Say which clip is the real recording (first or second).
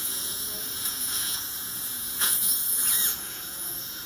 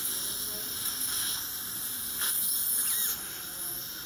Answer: second